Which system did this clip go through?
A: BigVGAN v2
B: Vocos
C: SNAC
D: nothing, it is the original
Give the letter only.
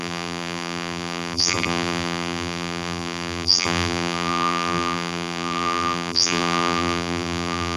A